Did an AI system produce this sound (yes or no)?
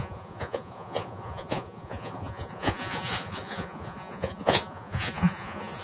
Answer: yes